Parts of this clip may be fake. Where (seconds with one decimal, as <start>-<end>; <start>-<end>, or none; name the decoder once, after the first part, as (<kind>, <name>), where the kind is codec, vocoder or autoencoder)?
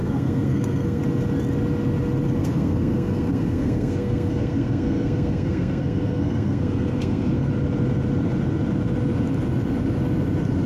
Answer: 0.0-1.0 (codec, SNAC); 2.4-7.5